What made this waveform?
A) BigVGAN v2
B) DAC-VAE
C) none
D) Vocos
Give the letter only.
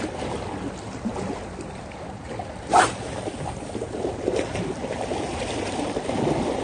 A